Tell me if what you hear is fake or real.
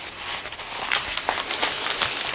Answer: real